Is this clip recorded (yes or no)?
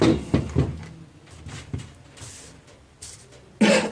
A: yes